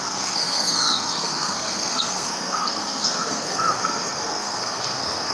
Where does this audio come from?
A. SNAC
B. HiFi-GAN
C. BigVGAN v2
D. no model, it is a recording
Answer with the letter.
A